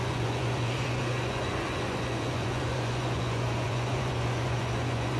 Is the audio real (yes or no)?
no